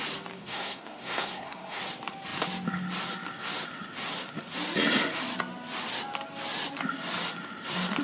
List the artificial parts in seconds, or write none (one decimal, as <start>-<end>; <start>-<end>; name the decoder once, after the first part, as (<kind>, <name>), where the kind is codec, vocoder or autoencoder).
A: 0.4-1.8 (codec, SNAC)